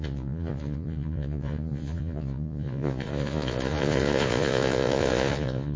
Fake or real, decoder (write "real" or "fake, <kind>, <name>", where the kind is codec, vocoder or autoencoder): fake, vocoder, Vocos